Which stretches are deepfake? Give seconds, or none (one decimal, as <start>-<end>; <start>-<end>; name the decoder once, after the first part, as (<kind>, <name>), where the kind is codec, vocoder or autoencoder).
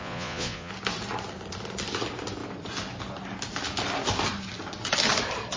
0.0-0.7 (vocoder, Vocos)